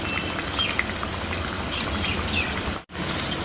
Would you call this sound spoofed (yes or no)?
no